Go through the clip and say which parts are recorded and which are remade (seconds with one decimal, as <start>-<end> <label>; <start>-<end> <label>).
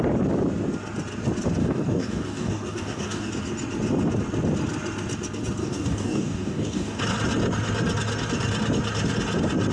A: 0.0-1.6 recorded; 1.6-3.3 remade; 3.3-5.6 recorded; 5.6-7.0 remade; 7.0-9.7 recorded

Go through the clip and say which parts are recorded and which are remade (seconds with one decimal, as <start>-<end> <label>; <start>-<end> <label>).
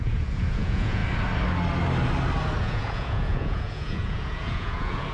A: 0.0-1.0 remade; 1.0-2.6 recorded; 2.6-5.1 remade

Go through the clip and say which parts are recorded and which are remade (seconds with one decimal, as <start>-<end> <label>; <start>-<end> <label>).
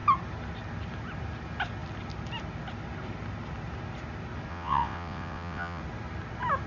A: 0.0-4.5 recorded; 4.5-5.8 remade; 5.8-6.7 recorded